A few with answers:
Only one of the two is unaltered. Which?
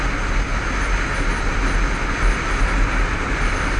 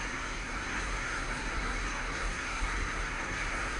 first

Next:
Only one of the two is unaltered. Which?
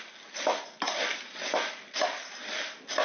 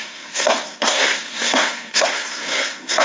first